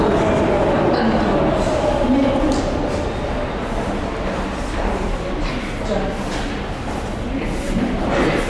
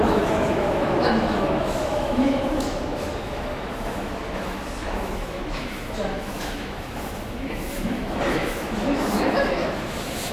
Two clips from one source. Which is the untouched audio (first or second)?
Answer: first